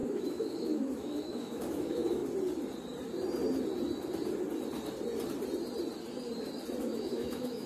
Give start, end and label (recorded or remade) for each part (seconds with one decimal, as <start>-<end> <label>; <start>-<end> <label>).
0.0-2.2 remade; 2.2-6.8 recorded; 6.8-7.7 remade